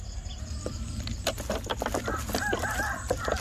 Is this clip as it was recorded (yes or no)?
no